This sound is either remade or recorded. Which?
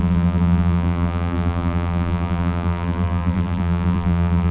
remade